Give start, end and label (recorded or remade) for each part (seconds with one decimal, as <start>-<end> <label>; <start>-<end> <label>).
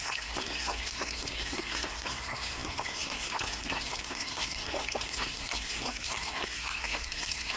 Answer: 0.0-7.6 remade